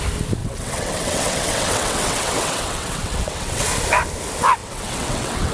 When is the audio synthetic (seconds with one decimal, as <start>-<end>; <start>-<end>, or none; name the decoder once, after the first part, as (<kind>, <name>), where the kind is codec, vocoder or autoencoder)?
0.4-3.7 (vocoder, WaveNeXt); 4.6-5.5